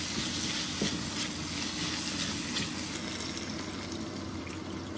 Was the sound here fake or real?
real